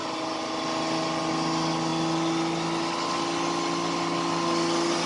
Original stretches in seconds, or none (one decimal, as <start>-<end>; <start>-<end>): 0.0-5.1